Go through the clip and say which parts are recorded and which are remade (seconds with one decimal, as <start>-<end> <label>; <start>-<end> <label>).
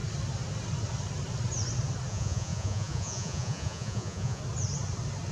0.0-2.1 recorded; 2.1-4.4 remade; 4.4-5.3 recorded